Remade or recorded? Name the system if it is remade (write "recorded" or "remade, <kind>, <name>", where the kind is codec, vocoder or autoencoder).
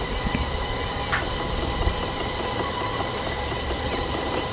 recorded